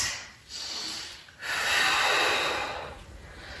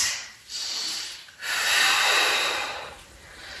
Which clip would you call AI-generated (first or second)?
second